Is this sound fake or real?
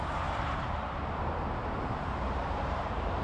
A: fake